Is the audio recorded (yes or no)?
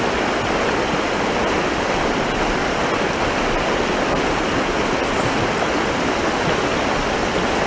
yes